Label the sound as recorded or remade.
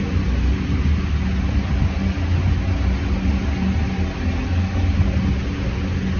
recorded